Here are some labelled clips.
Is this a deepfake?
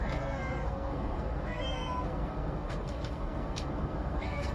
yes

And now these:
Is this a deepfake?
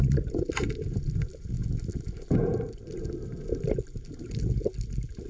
no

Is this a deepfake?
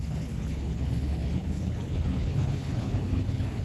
yes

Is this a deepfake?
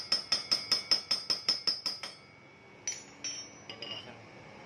no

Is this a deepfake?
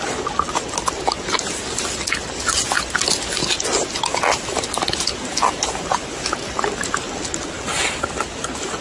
no